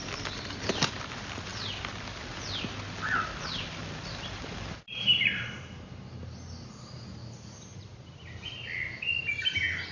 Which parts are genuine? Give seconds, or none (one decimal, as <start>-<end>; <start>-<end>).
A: 1.5-3.4